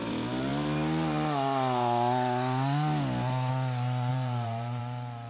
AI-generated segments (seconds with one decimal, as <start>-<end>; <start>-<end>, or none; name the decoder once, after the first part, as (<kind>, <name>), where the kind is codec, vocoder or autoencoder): 4.1-4.8 (vocoder, BigVGAN v2)